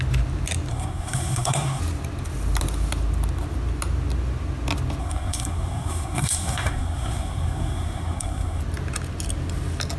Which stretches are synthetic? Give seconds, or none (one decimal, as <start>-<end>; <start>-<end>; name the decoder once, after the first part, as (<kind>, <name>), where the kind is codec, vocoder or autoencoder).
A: 0.7-1.8 (codec, SNAC); 5.0-8.6